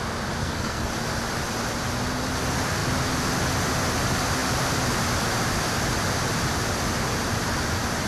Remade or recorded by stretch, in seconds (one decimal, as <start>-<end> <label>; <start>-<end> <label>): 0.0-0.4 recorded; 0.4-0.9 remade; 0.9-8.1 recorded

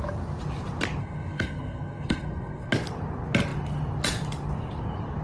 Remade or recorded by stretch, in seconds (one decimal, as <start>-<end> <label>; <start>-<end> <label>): 0.0-1.0 recorded; 1.0-2.7 remade; 2.7-5.2 recorded

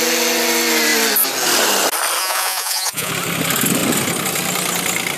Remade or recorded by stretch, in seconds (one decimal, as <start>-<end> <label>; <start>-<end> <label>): 0.0-2.2 recorded; 2.2-3.1 remade; 3.1-5.2 recorded

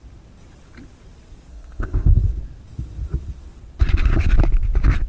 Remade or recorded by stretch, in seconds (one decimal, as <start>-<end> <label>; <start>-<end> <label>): 0.0-1.5 recorded; 1.5-2.2 remade; 2.2-5.1 recorded

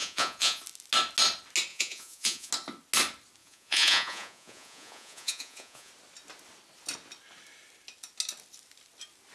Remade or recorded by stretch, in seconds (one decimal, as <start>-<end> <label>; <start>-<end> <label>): 0.0-0.6 remade; 0.6-1.7 recorded; 1.7-2.5 remade; 2.5-3.4 recorded; 3.4-5.9 remade; 5.9-9.3 recorded